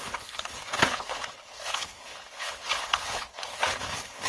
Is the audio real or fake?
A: fake